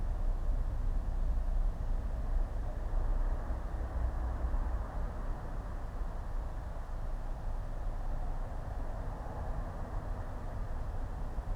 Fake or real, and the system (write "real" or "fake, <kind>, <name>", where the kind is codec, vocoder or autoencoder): real